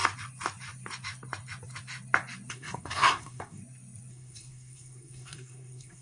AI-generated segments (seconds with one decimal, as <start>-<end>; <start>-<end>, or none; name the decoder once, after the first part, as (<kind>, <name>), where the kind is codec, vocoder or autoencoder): 2.5-3.6 (codec, SNAC); 4.1-6.0

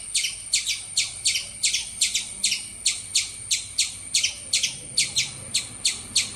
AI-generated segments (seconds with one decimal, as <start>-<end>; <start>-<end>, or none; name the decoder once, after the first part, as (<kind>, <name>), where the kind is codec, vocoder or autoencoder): none